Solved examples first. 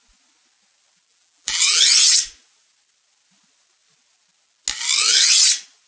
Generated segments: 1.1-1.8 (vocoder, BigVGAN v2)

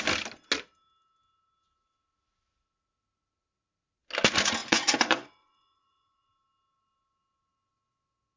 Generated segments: 4.6-6.3 (vocoder, Vocos)

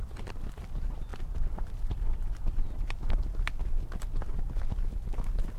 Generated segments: none

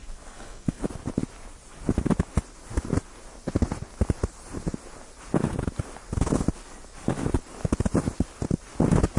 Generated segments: 0.0-0.8 (codec, SNAC)

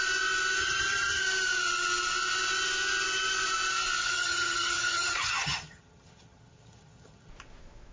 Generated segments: 0.6-1.2 (vocoder, HiFi-GAN); 4.0-7.3

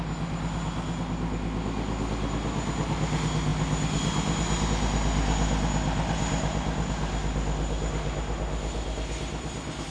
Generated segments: none